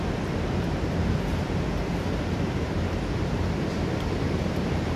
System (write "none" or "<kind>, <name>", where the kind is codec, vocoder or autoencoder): vocoder, BigVGAN v2